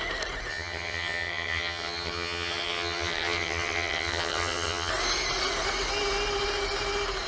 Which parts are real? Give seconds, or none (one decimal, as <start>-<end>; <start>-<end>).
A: 0.0-0.5; 4.9-7.3